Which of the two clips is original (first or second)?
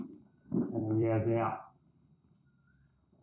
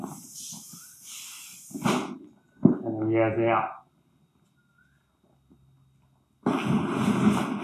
second